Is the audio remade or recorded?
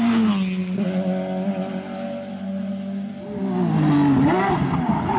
recorded